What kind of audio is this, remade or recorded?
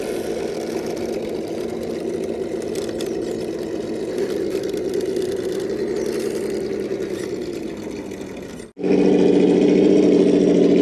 recorded